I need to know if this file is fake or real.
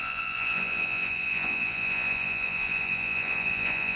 fake